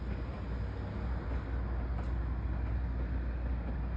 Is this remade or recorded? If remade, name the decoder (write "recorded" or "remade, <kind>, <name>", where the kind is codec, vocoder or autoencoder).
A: recorded